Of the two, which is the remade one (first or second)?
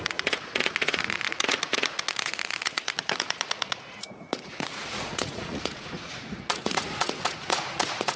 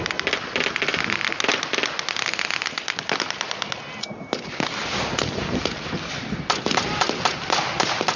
first